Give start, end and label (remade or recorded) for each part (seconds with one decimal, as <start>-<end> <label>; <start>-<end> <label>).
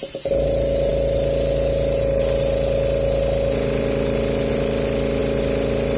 0.0-6.0 recorded